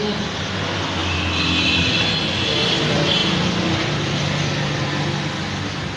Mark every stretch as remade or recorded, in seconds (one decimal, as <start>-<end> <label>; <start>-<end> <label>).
0.0-6.0 recorded